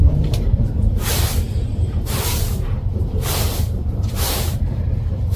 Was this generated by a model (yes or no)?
yes